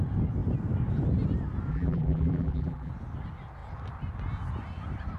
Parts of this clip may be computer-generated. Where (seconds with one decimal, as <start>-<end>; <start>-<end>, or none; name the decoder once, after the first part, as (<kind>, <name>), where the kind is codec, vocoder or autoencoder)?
1.7-2.9 (vocoder, BigVGAN v2)